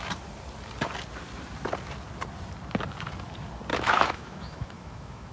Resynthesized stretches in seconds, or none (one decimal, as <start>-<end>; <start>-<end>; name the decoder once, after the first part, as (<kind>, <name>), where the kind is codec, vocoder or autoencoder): 3.7-5.3 (autoencoder, DAC-VAE)